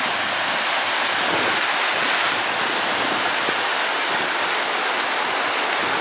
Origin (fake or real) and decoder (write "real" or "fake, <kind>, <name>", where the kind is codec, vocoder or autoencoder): real